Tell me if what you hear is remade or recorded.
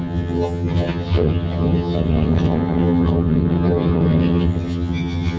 remade